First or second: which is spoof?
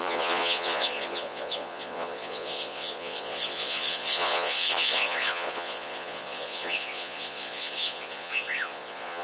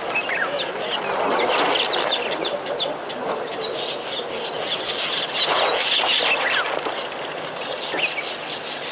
first